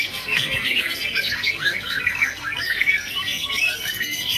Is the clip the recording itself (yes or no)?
no